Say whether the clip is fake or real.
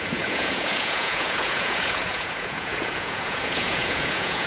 fake